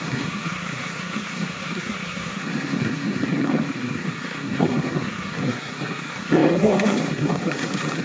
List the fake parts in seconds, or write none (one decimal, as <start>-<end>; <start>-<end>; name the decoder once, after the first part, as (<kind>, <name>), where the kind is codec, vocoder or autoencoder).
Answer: 0.0-8.0 (codec, SNAC)